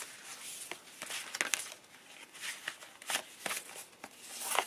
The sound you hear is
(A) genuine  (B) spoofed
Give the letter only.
A